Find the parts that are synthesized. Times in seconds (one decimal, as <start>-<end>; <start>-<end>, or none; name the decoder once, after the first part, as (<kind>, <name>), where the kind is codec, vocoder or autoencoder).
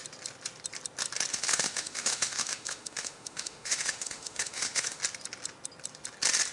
1.3-5.0 (autoencoder, DAC-VAE)